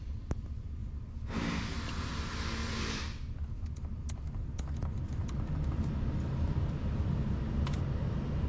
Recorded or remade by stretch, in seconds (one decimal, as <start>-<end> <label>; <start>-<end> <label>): 0.0-8.5 recorded